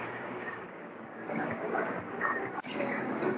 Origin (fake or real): fake